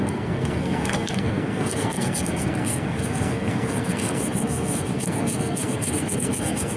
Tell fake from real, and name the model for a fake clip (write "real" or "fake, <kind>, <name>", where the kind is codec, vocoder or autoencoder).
fake, codec, SNAC